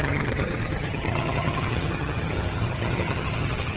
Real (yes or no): no